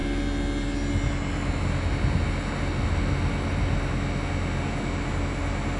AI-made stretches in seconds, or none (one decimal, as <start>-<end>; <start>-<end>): none